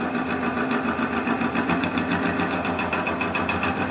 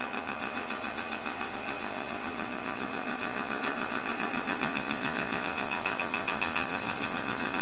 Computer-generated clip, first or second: second